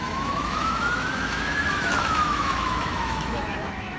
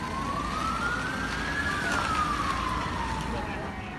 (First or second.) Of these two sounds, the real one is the second